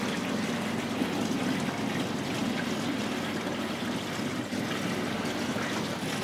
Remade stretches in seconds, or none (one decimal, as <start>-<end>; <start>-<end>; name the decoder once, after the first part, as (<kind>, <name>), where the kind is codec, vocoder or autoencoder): none